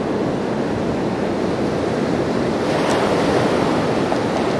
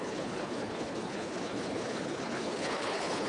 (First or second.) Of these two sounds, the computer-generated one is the second